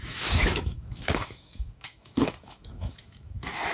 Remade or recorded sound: remade